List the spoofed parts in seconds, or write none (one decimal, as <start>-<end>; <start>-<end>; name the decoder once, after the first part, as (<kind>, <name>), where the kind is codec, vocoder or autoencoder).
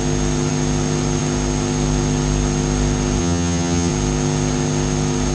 3.2-3.9 (vocoder, HiFi-GAN)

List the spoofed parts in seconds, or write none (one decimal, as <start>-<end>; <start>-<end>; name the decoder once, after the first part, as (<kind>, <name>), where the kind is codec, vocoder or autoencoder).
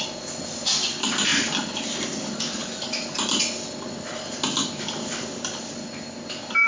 none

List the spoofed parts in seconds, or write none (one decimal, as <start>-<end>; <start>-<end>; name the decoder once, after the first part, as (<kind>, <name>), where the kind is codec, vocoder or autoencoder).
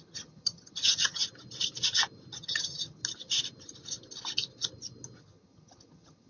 0.0-1.2 (vocoder, HiFi-GAN); 2.4-3.0; 5.2-6.3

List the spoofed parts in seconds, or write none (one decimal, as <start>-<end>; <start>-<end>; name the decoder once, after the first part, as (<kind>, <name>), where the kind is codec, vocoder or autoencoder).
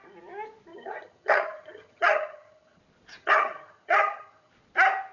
0.7-2.8 (vocoder, HiFi-GAN); 3.2-4.5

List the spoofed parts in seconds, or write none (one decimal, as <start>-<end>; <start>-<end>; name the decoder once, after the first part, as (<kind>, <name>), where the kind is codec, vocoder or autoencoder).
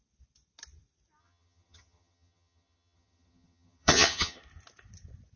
1.2-4.4 (vocoder, HiFi-GAN)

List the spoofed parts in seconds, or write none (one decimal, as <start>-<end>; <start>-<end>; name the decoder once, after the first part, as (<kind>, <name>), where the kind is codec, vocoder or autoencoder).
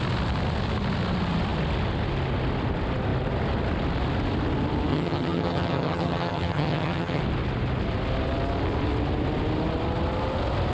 4.9-7.2 (vocoder, HiFi-GAN)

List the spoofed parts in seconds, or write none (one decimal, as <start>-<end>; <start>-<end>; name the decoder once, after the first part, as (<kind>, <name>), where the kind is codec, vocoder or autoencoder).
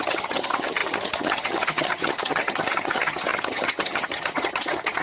0.0-5.0 (vocoder, HiFi-GAN)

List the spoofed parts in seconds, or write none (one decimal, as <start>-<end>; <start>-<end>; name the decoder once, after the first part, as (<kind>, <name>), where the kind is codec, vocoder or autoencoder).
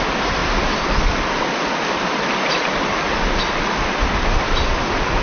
none